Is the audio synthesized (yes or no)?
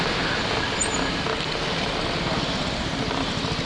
no